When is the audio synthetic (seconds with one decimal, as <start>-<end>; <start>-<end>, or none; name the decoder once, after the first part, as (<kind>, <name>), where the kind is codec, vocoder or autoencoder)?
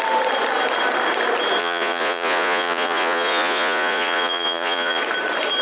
1.6-5.0 (vocoder, Vocos)